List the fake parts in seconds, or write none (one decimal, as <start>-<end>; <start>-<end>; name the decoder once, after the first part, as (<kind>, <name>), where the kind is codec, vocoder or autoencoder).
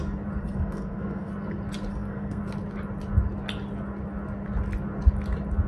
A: 0.4-1.3 (codec, SNAC); 1.9-2.4